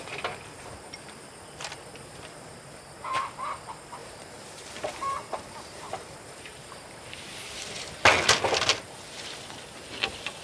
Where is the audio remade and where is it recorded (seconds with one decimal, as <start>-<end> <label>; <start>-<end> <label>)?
0.0-4.0 recorded; 4.0-7.6 remade; 7.6-10.4 recorded